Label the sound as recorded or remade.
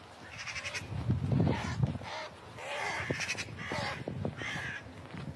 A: recorded